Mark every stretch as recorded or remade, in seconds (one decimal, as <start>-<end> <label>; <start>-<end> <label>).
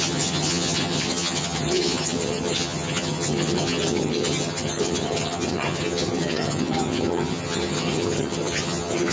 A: 0.0-9.1 remade